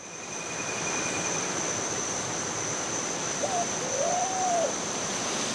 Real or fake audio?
fake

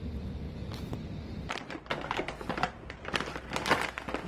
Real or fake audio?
real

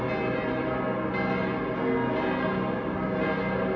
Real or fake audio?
real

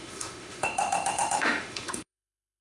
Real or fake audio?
fake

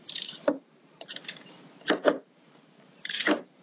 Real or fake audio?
fake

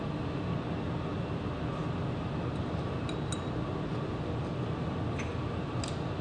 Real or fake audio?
real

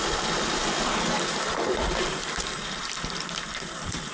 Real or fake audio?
fake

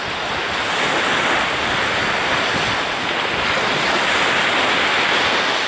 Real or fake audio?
real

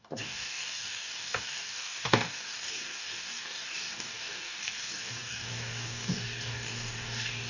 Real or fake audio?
fake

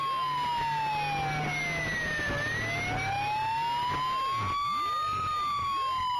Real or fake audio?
real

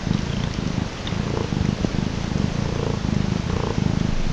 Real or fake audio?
real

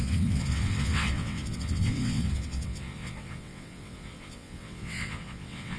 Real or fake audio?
fake